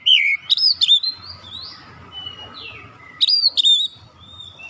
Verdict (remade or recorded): remade